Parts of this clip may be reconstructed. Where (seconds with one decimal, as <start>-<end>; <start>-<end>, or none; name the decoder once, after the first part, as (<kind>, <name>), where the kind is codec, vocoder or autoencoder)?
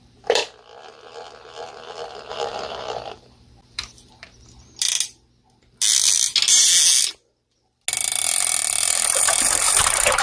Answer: 0.0-0.4 (vocoder, BigVGAN v2); 2.3-4.4; 8.8-10.2